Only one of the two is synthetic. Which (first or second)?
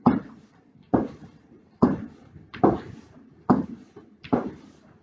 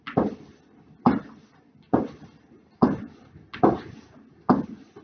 first